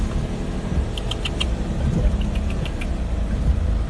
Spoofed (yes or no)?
no